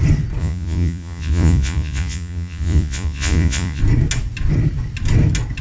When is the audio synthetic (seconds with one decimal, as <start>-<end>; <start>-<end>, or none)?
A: 0.4-3.8